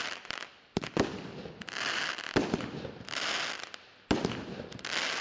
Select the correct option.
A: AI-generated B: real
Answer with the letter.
B